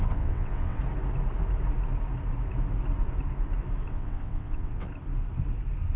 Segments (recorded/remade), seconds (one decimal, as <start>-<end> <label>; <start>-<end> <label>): 0.0-0.8 remade; 0.8-3.9 recorded; 3.9-4.9 remade; 4.9-6.0 recorded